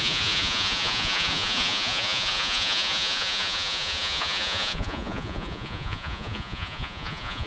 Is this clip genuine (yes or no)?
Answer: no